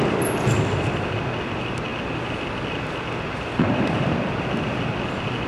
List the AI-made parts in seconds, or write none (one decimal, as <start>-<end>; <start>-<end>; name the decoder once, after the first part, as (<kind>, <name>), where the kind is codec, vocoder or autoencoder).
none